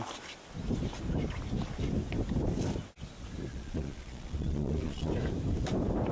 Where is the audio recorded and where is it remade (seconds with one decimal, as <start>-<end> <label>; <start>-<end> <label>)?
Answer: 0.0-3.5 recorded; 3.5-5.1 remade; 5.1-6.1 recorded